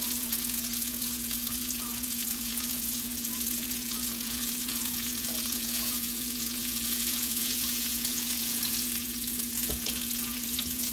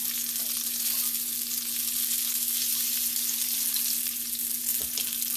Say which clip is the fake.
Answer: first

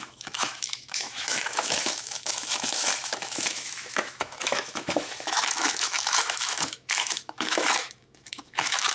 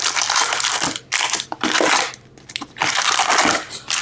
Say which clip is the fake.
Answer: first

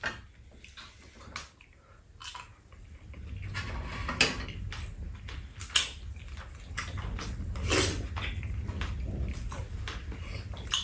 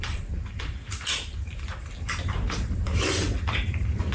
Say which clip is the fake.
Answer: second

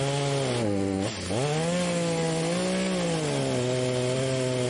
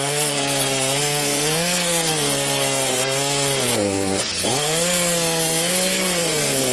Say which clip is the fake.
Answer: second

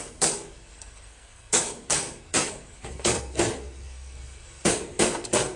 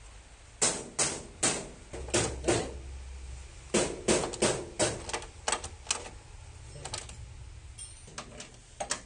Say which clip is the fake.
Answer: first